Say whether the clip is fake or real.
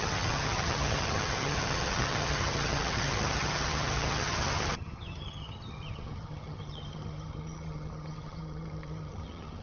fake